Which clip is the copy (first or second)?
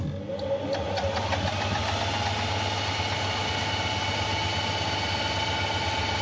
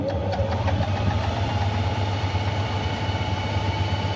second